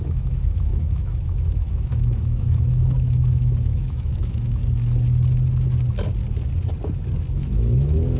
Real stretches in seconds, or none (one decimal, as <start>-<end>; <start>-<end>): 4.6-7.3